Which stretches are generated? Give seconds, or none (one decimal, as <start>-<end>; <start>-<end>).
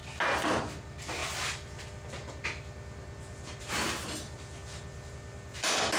0.7-6.0